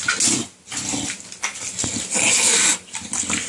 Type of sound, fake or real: real